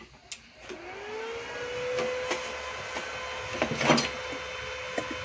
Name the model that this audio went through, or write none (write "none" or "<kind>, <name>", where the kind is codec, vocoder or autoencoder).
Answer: none